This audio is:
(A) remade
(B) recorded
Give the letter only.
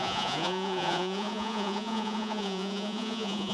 A